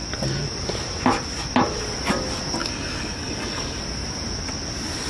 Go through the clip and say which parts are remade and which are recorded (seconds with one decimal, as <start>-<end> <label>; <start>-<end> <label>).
0.0-2.6 recorded; 2.6-3.8 remade; 3.8-5.1 recorded